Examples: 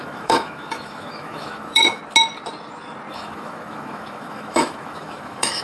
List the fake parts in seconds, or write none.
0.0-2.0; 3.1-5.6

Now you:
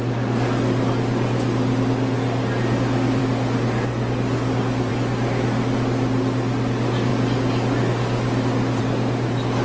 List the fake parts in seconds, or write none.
none

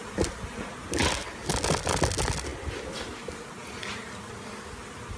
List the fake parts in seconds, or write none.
none

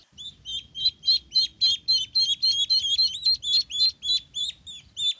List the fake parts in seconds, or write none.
none

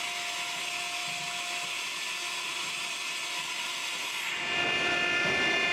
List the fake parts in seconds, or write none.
none